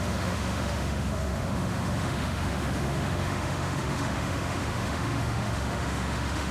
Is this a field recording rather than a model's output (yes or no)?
no